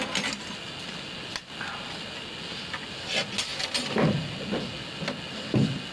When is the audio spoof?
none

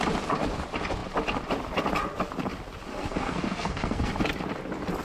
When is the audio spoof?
2.9-4.1 (codec, SNAC)